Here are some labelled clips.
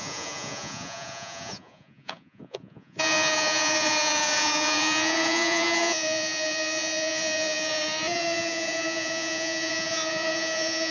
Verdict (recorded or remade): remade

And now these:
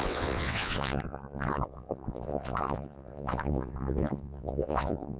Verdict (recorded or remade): remade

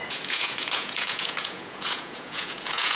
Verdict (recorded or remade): remade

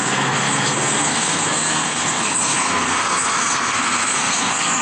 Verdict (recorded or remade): remade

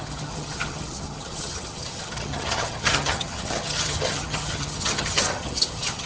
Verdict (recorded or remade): remade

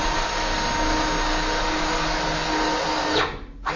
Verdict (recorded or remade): recorded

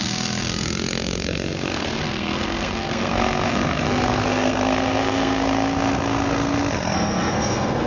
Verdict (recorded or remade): remade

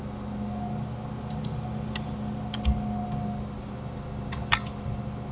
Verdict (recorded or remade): recorded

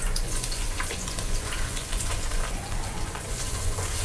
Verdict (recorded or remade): remade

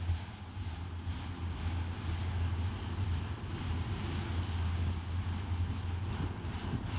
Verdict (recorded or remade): recorded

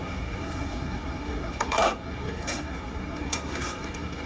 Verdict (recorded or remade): remade